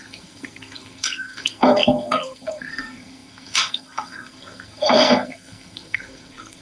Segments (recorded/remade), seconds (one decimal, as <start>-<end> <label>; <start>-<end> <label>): 0.0-6.6 remade